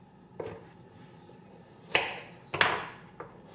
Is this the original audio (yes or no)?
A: yes